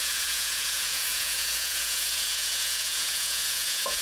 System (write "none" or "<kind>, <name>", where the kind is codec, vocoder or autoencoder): vocoder, Vocos